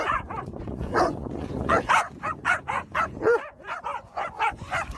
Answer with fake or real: fake